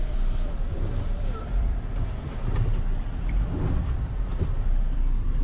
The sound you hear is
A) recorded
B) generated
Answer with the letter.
B